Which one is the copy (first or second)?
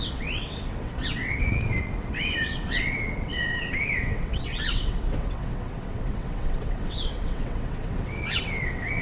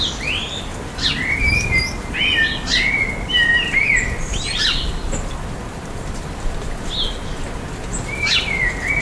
first